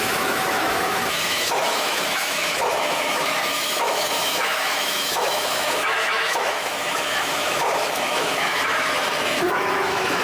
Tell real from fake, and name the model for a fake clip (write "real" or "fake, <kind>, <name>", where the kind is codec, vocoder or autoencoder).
fake, autoencoder, DAC-VAE